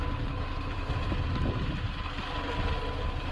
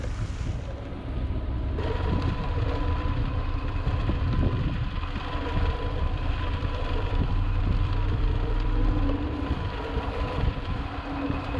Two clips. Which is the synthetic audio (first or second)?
second